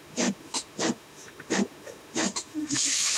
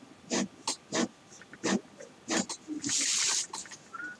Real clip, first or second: second